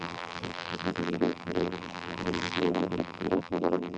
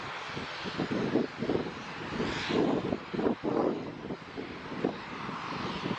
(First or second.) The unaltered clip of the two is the second